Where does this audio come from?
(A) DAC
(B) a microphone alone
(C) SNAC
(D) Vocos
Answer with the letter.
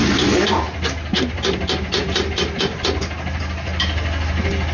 B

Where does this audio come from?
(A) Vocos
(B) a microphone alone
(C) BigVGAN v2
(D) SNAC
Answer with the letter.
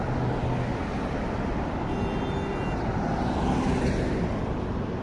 B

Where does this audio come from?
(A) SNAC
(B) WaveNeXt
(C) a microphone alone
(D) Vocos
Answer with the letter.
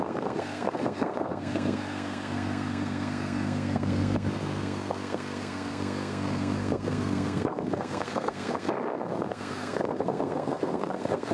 A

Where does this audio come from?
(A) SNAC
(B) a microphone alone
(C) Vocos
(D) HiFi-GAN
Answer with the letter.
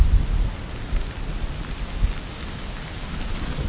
B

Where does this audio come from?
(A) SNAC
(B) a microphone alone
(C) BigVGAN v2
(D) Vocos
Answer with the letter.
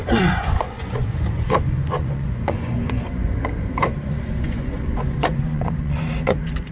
D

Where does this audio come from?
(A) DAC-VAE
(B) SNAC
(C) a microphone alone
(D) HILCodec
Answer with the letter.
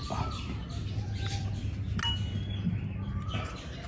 C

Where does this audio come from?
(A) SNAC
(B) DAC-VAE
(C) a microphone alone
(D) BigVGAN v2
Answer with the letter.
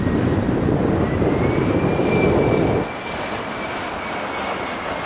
C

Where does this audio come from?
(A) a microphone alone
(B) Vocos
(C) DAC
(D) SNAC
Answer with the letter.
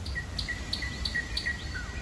A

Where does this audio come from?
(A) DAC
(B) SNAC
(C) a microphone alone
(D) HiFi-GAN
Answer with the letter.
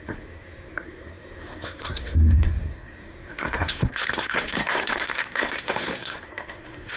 B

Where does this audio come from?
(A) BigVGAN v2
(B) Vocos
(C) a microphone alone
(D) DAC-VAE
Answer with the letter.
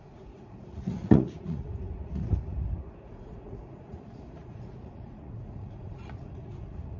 B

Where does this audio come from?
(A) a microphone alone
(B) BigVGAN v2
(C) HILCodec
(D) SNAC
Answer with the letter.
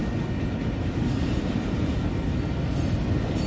A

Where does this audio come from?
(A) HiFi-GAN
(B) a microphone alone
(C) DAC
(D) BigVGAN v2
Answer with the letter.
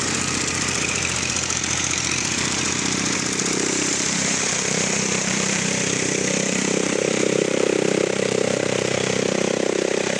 D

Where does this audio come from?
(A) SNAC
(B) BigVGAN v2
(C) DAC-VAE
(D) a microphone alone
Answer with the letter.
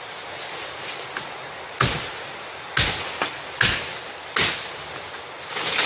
D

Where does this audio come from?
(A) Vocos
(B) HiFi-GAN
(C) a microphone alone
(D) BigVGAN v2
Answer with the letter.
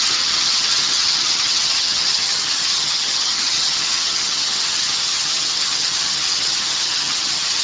B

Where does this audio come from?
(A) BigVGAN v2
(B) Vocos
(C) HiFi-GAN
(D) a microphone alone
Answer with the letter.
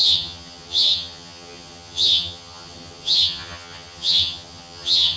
C